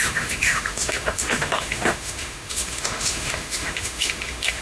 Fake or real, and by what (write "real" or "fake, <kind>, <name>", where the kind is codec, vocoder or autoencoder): fake, autoencoder, DAC-VAE